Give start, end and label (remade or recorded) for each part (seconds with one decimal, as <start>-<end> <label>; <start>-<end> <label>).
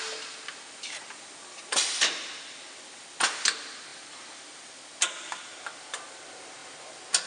0.0-7.3 recorded